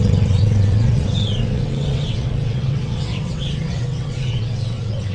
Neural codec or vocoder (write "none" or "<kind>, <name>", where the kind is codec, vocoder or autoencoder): vocoder, WaveNeXt